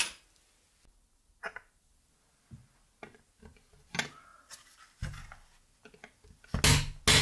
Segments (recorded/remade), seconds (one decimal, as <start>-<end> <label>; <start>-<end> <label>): 0.0-7.2 recorded